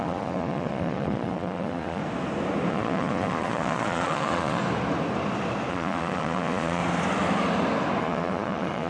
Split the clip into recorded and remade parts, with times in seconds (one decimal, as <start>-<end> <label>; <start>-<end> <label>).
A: 0.0-2.0 remade; 2.0-2.7 recorded; 2.7-4.6 remade; 4.6-5.7 recorded; 5.7-6.8 remade; 6.8-8.0 recorded; 8.0-8.9 remade